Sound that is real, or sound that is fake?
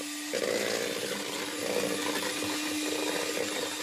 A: real